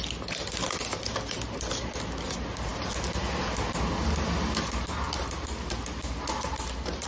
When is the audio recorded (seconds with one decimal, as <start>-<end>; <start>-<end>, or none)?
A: 0.0-7.1